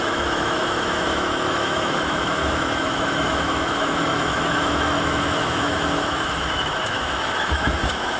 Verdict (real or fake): fake